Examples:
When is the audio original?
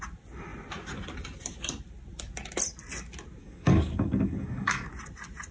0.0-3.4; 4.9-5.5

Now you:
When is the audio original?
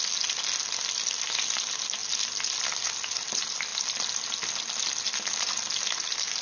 0.0-6.4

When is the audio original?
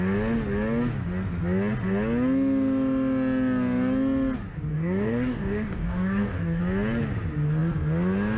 0.0-4.7; 6.6-8.4